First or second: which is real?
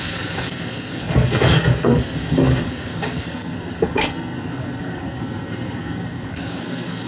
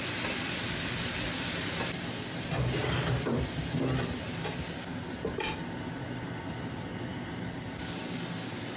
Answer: second